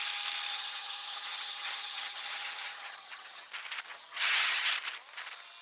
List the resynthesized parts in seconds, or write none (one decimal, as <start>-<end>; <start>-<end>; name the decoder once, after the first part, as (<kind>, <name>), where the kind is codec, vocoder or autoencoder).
0.5-3.5 (vocoder, HiFi-GAN); 3.9-4.7